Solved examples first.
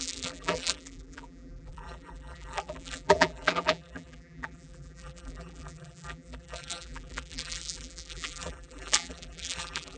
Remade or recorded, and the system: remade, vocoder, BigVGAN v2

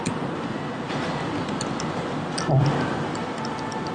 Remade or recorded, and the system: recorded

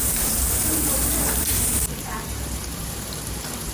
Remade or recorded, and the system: remade, vocoder, BigVGAN v2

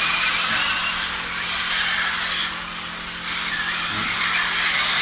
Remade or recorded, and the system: recorded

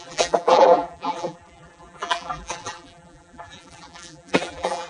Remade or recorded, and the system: remade, vocoder, BigVGAN v2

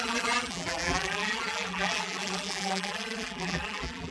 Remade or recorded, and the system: remade, vocoder, BigVGAN v2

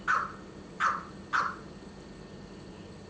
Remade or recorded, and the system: recorded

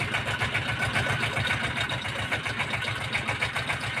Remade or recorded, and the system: remade, vocoder, BigVGAN v2